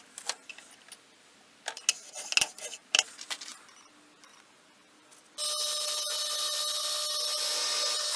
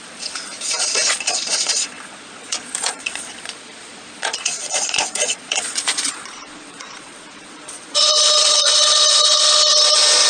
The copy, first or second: second